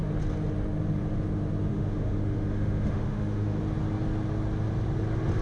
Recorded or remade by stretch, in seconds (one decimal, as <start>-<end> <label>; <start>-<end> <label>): 0.0-1.7 recorded; 1.7-3.6 remade; 3.6-5.4 recorded